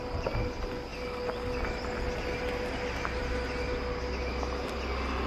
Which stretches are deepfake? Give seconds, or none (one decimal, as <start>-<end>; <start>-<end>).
none